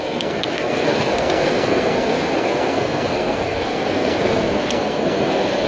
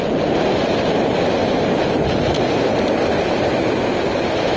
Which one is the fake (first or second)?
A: first